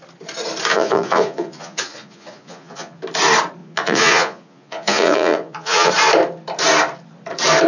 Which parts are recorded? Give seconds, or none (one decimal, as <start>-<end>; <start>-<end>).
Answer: 0.0-0.7; 3.0-3.6; 5.9-7.7